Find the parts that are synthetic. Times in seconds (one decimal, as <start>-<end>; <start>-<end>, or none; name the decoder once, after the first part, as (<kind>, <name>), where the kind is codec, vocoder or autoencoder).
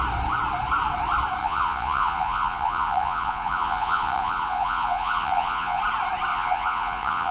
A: 1.4-5.8 (vocoder, Vocos); 6.3-7.3